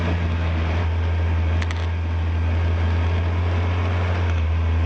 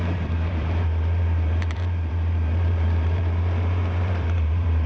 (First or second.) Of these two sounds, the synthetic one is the second